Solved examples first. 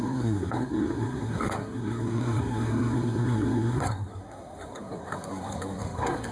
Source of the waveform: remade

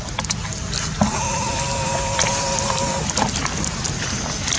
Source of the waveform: recorded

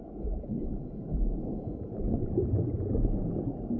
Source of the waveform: recorded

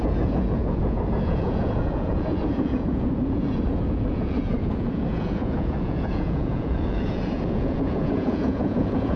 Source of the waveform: remade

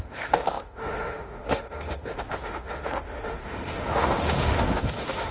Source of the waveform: remade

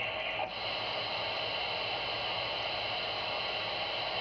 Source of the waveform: recorded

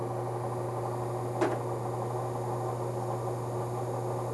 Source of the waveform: recorded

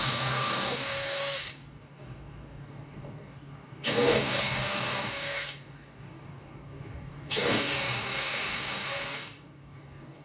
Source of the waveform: remade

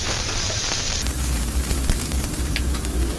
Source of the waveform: remade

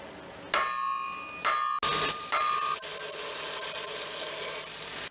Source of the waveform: recorded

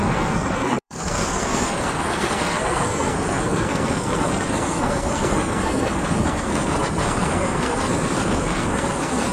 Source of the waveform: remade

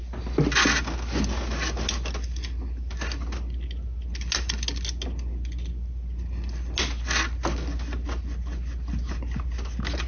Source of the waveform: recorded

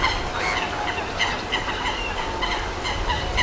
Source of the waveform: recorded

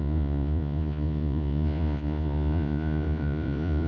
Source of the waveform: remade